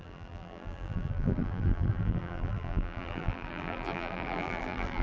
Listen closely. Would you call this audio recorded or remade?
remade